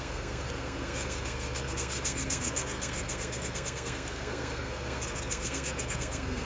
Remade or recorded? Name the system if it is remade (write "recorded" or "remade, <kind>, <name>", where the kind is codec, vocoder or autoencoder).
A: remade, codec, SNAC